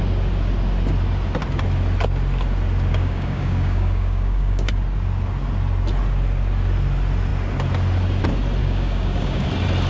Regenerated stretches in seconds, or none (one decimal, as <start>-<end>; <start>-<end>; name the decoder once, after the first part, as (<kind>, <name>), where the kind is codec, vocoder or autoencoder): 2.9-4.7 (codec, DAC); 8.6-9.5